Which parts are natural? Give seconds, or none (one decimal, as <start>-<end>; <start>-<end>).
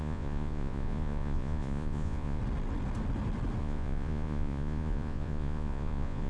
2.4-3.6